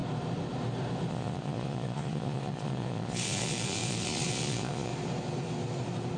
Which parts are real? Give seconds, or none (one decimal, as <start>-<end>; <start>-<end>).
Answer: 0.0-1.1; 4.9-6.2